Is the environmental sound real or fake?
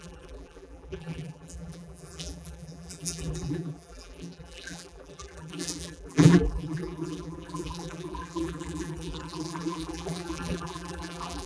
fake